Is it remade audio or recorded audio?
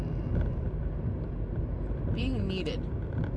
recorded